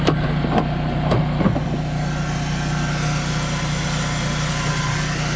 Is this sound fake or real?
real